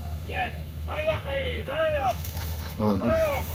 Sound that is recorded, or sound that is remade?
remade